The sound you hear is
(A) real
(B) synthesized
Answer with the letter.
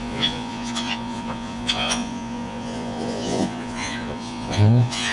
B